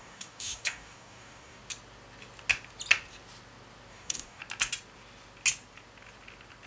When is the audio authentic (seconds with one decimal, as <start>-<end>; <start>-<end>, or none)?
1.6-3.9; 4.4-6.7